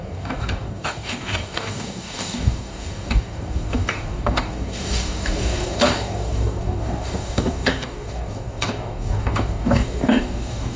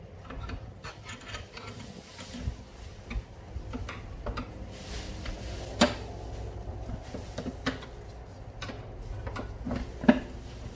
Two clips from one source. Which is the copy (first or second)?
first